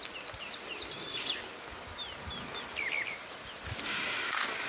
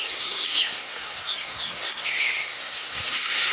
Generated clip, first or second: second